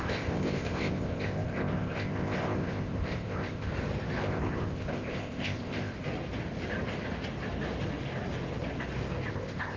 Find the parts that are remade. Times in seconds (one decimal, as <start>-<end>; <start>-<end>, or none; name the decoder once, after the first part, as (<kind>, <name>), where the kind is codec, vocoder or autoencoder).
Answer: 0.0-3.7 (codec, ZipCodec); 4.2-5.9; 9.3-9.8